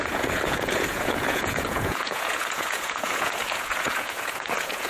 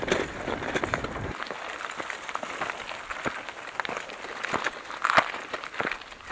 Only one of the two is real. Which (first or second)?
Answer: second